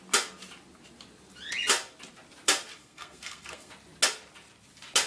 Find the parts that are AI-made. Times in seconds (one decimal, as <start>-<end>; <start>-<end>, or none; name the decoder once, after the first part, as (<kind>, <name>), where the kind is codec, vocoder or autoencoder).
2.8-3.7 (codec, SNAC)